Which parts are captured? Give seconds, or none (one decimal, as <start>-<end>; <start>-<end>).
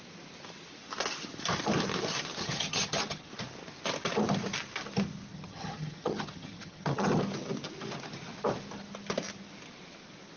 0.0-2.4; 3.3-5.3; 7.2-10.4